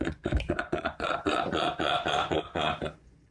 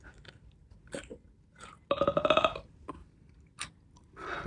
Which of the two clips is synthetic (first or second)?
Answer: first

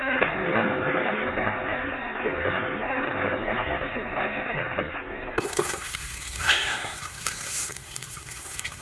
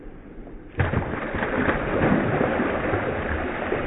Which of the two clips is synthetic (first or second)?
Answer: first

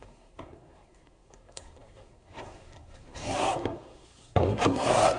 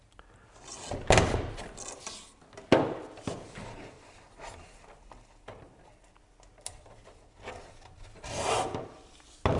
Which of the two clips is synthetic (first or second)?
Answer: first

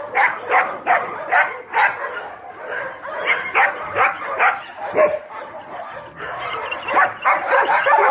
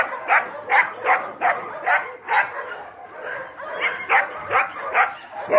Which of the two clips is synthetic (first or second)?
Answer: first